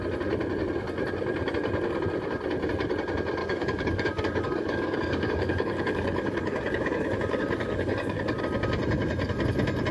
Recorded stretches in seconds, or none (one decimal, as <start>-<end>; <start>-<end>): 0.0-3.4; 8.4-9.9